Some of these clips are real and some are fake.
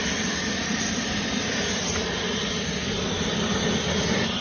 real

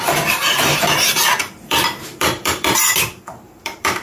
fake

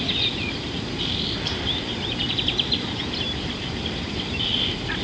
fake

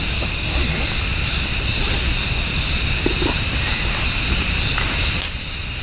real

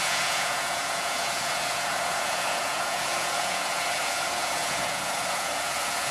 fake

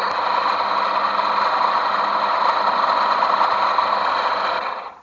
real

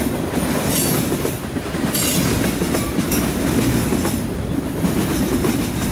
real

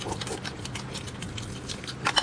real